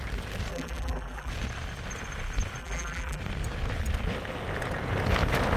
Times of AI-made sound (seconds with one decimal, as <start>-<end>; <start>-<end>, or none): 0.5-1.3; 2.6-3.2

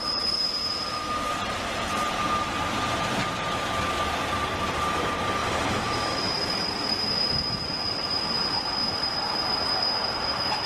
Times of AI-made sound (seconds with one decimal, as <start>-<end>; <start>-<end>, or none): 0.0-3.2; 4.7-10.7

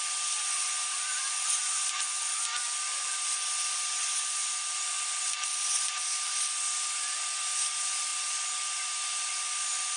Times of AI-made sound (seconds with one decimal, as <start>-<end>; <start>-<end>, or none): none